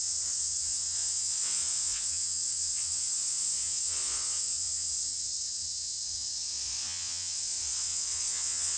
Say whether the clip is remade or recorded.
remade